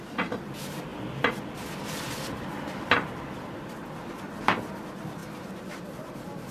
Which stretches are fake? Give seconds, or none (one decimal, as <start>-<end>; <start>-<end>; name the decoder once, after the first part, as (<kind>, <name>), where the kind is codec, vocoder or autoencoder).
5.2-5.7 (vocoder, BigVGAN v2)